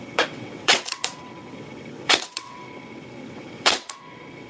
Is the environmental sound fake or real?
fake